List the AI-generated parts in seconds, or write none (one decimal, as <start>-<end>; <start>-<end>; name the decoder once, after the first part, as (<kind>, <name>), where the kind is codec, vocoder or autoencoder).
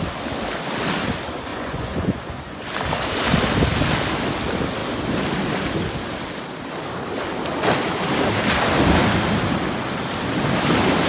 1.5-2.6 (vocoder, Vocos)